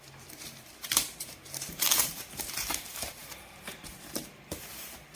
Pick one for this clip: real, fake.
fake